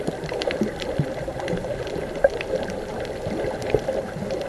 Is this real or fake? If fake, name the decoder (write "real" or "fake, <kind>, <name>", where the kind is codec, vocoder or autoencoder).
real